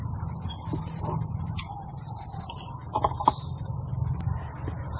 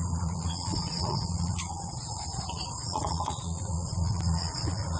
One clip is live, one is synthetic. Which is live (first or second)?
first